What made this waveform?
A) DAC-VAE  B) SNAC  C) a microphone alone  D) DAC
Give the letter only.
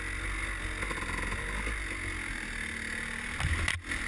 C